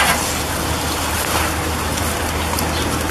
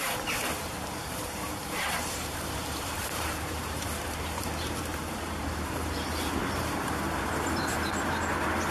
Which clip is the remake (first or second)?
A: second